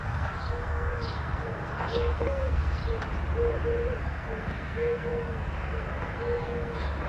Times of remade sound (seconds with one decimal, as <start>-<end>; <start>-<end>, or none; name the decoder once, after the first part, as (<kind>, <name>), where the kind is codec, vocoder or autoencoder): 0.0-2.8 (codec, SNAC); 4.0-7.1

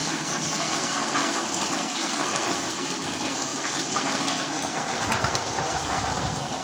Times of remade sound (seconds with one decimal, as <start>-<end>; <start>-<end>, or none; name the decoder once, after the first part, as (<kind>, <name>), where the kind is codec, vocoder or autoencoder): 0.0-6.6 (codec, SNAC)

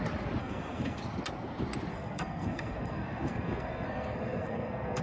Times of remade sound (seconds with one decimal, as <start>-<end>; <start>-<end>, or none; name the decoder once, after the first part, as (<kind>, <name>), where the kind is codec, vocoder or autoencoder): 0.4-1.0 (codec, SNAC); 1.9-5.0

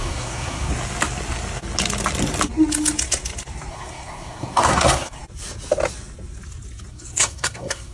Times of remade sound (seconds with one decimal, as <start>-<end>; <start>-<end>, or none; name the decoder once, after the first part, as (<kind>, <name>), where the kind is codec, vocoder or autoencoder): 0.0-0.7 (codec, SNAC); 3.7-5.2; 6.9-7.9

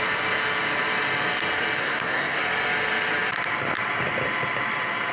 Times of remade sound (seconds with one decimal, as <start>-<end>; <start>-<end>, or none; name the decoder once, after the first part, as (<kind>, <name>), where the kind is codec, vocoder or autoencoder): 1.8-2.4 (codec, SNAC)

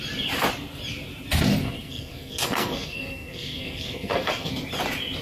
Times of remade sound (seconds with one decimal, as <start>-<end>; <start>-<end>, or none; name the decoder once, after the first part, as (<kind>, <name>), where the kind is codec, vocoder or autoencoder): 1.6-4.5 (codec, SNAC)

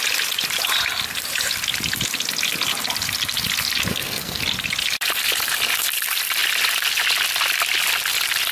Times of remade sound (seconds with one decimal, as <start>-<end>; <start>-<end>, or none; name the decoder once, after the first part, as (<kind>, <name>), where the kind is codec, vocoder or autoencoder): 3.9-4.4 (codec, SNAC)